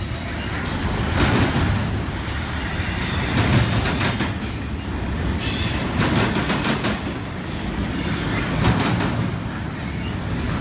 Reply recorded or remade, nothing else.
recorded